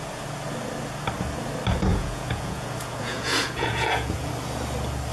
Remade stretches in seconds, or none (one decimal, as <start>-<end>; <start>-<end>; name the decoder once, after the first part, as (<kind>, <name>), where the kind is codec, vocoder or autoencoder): 1.9-4.3 (vocoder, Vocos)